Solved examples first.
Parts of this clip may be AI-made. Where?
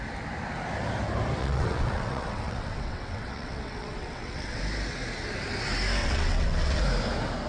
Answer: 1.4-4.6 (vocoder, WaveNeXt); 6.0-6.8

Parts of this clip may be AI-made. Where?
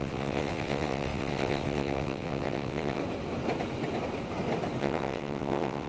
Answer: 0.0-3.0 (vocoder, WaveNeXt); 4.8-5.9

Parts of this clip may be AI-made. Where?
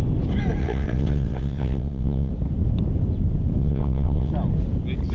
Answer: 0.6-2.3 (vocoder, WaveNeXt); 3.6-4.3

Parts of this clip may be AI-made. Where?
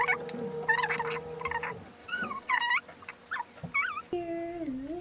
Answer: 2.0-2.6 (vocoder, WaveNeXt)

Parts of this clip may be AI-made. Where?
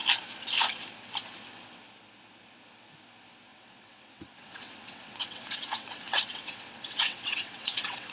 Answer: 3.5-8.1 (vocoder, WaveNeXt)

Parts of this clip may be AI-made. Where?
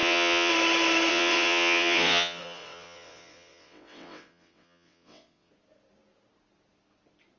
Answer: 0.0-0.5 (vocoder, WaveNeXt); 1.1-5.5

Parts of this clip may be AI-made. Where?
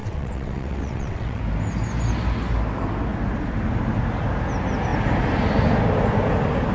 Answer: 0.0-1.4 (vocoder, WaveNeXt)